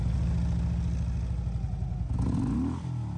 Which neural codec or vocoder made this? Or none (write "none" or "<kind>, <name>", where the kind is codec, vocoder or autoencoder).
none